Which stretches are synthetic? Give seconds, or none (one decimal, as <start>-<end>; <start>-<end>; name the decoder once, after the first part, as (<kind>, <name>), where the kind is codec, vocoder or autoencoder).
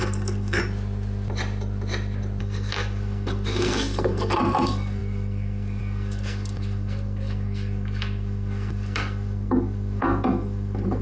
0.0-0.6 (codec, SNAC); 2.4-11.0